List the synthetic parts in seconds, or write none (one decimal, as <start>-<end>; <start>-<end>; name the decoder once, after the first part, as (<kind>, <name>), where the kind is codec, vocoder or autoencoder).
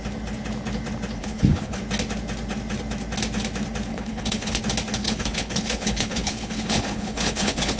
1.2-1.8 (codec, HILCodec); 3.9-4.6; 5.0-7.8